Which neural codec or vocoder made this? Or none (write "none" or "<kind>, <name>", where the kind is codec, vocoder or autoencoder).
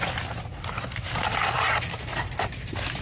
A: none